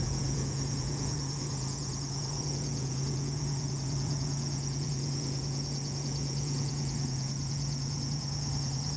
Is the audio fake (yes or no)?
yes